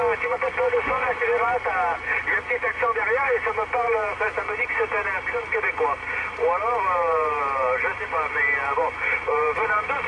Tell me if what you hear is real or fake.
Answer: real